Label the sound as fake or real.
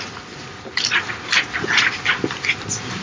fake